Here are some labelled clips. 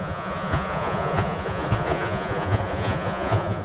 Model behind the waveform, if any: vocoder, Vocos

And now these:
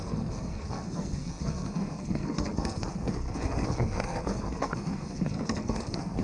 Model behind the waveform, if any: codec, SNAC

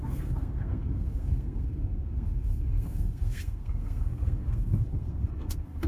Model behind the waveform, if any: codec, SNAC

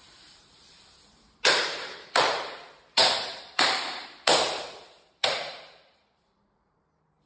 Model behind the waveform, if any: vocoder, BigVGAN v2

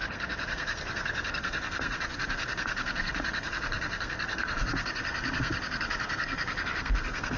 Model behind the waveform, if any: codec, SNAC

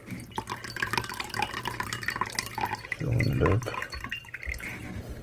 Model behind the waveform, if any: none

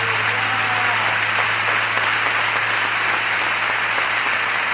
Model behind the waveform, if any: none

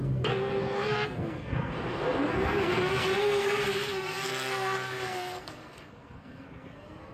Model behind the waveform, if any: codec, SNAC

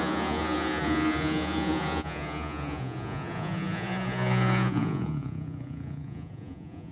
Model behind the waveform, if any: vocoder, Vocos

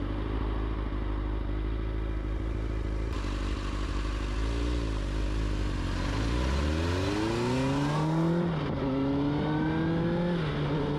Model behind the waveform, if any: none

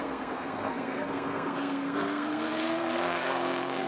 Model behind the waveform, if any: codec, SNAC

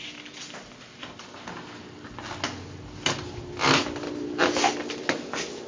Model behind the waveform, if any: none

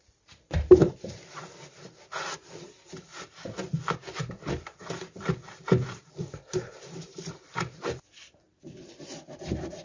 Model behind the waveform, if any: vocoder, BigVGAN v2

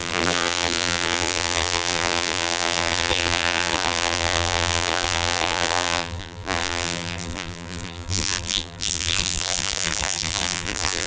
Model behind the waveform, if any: vocoder, BigVGAN v2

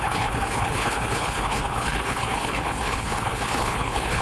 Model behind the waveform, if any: codec, HILCodec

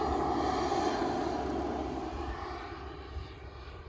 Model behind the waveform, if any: none